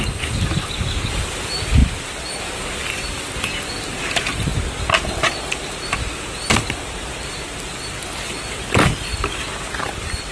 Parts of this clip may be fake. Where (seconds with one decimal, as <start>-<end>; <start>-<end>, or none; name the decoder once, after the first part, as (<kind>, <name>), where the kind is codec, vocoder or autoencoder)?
0.0-1.8 (vocoder, BigVGAN v2); 2.4-4.5; 8.3-9.1; 9.7-10.3